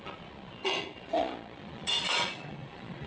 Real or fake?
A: fake